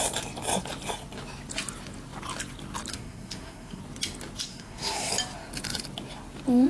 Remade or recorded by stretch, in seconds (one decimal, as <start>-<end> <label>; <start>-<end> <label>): 0.0-2.9 recorded; 2.9-3.8 remade; 3.8-4.5 recorded; 4.5-5.1 remade; 5.1-6.7 recorded